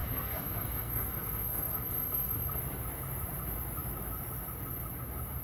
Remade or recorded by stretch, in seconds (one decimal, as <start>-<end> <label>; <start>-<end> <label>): 0.0-2.6 remade; 2.6-5.4 recorded